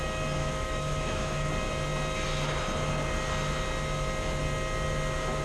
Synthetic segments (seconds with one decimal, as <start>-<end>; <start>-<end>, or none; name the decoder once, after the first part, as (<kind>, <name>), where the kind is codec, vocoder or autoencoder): 0.4-1.5 (autoencoder, DAC-VAE)